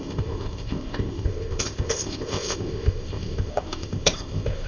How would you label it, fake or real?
fake